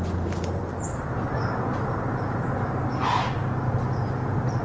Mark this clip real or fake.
real